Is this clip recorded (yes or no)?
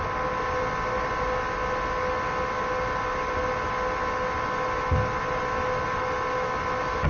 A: yes